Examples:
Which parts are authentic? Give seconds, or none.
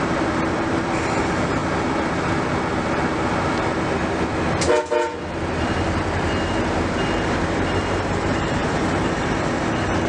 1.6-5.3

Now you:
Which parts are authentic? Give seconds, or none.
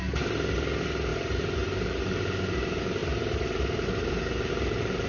0.0-1.1; 2.0-3.0; 4.5-5.1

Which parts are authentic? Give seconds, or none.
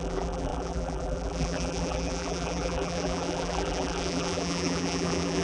none